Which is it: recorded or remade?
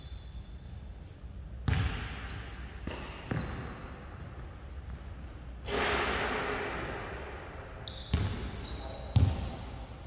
recorded